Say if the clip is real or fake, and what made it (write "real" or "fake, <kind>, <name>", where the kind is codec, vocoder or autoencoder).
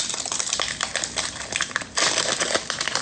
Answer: fake, vocoder, BigVGAN v2